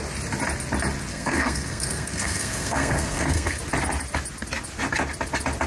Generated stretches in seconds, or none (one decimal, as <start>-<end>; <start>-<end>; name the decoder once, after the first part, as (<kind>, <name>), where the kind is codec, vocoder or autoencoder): 1.1-3.6 (codec, SNAC)